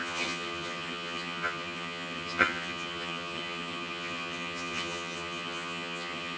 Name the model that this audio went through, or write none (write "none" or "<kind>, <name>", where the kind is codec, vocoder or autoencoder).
vocoder, HiFi-GAN